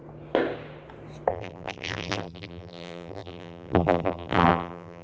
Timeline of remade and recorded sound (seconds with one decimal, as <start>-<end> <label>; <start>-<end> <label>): 0.0-1.3 recorded; 1.3-5.0 remade